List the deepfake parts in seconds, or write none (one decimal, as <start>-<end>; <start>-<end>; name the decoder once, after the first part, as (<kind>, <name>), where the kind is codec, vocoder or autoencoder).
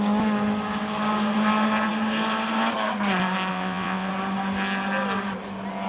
3.5-4.1 (vocoder, WaveNeXt)